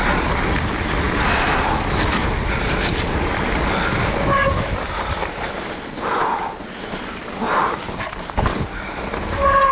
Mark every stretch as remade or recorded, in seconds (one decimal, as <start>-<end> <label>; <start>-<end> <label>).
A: 0.0-9.7 recorded